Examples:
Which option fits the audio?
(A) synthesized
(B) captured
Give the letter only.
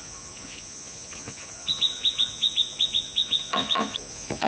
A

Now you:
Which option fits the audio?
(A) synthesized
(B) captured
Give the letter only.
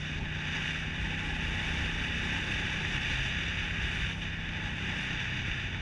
B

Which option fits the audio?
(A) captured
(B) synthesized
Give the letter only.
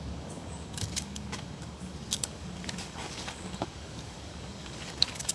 B